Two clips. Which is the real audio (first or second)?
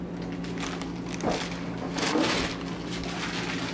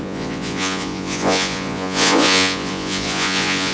first